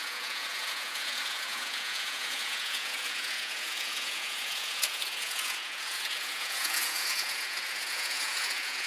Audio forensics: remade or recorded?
remade